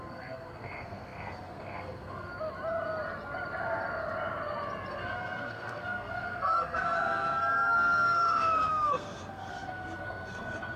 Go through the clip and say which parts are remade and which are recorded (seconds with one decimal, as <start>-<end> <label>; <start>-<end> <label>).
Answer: 0.0-2.3 remade; 2.3-4.9 recorded; 4.9-10.8 remade